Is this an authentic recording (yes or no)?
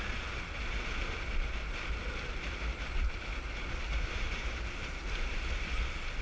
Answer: yes